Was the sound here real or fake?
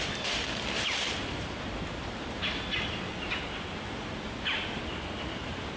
real